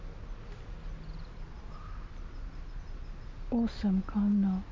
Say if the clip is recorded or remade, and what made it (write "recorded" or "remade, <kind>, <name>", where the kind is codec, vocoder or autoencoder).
recorded